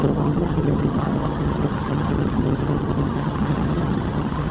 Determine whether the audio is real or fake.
fake